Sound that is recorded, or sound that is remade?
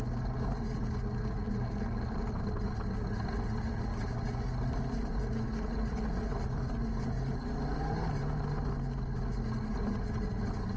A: recorded